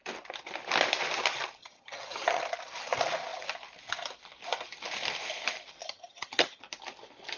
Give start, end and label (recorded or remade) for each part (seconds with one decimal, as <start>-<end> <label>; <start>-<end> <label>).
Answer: 0.0-1.6 recorded; 1.6-2.4 remade; 2.4-5.8 recorded; 5.8-6.6 remade; 6.6-7.4 recorded